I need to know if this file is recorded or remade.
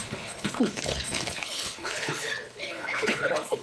remade